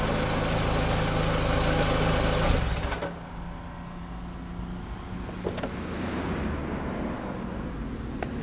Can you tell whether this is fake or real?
real